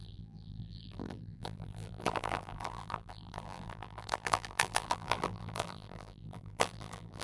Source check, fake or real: fake